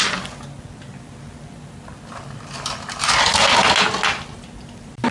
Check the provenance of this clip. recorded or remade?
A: recorded